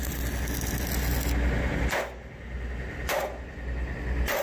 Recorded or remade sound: recorded